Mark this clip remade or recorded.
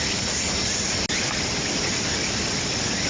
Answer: recorded